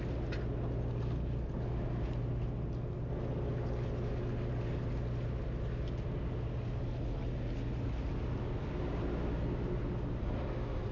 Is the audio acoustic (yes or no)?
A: yes